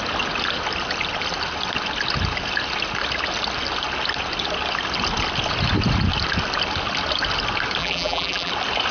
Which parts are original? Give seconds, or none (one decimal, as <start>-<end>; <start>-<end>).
0.0-7.8; 8.5-8.9